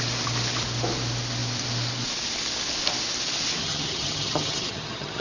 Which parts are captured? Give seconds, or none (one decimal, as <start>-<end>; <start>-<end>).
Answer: 0.0-3.6